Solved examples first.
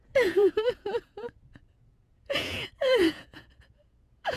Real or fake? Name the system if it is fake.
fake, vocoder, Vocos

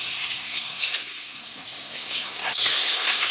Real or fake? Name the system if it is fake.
fake, codec, SNAC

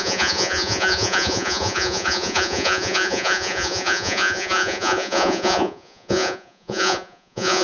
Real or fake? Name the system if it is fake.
fake, vocoder, Vocos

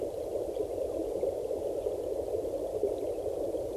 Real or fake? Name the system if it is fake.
real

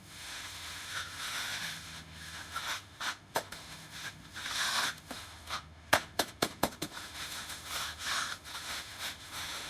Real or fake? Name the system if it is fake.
fake, autoencoder, DAC-VAE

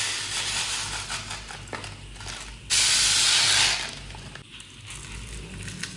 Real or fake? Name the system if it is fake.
real